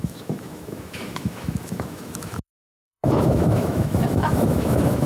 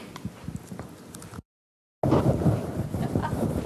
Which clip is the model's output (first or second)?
first